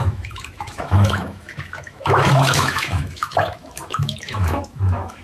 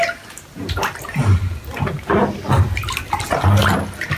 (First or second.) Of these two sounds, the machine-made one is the first